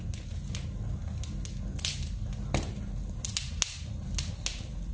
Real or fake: real